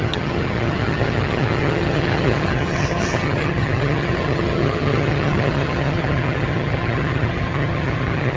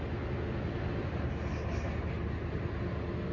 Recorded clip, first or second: second